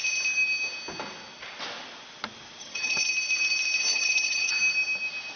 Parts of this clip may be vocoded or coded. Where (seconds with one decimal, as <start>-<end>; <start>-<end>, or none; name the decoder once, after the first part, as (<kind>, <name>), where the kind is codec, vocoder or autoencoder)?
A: 2.6-3.1 (vocoder, HiFi-GAN); 3.9-4.5